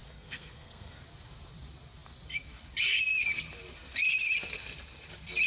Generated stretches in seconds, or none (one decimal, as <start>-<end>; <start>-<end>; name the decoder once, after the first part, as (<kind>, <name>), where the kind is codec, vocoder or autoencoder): 0.0-1.0 (codec, SNAC)